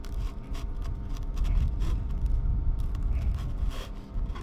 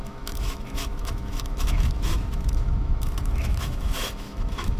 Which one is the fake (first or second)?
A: second